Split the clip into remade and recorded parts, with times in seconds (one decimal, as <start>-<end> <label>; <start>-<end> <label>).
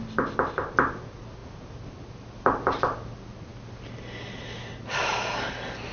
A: 0.0-1.4 recorded; 1.4-2.8 remade; 2.8-5.9 recorded